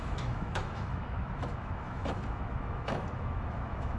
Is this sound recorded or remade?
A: remade